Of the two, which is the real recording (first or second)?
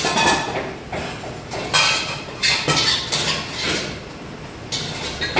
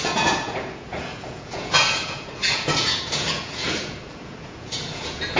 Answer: first